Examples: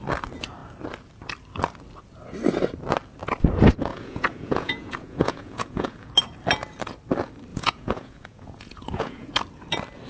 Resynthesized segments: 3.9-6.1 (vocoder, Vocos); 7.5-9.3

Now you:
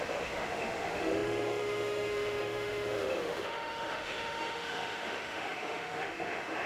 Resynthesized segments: 0.0-6.7 (autoencoder, DAC-VAE)

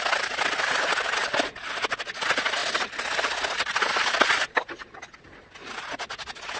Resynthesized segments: none

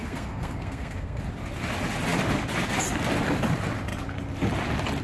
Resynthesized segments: 0.0-1.2 (codec, SNAC)

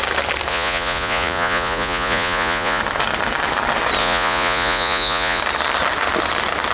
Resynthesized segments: 0.5-2.8 (vocoder, Vocos); 4.0-5.4

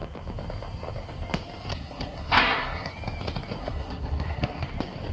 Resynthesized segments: 1.7-2.9 (codec, SNAC); 3.6-4.6

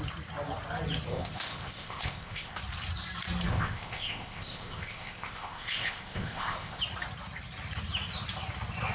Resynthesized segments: 1.1-2.6 (codec, ZipCodec); 3.5-6.8